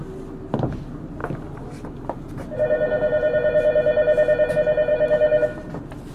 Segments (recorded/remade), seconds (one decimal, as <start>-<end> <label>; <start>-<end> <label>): 0.0-4.9 recorded; 4.9-5.6 remade; 5.6-6.1 recorded